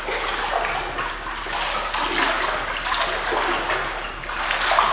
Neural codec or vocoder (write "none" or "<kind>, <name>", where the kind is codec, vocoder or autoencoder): none